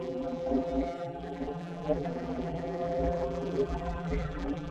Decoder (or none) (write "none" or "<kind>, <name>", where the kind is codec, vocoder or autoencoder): vocoder, BigVGAN v2